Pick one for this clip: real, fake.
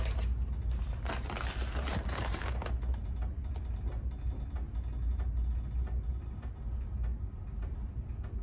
real